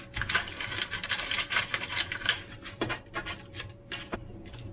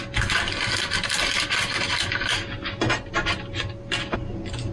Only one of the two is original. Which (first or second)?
second